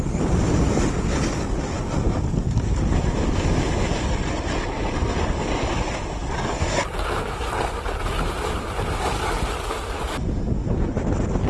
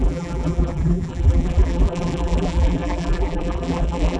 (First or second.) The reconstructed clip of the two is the second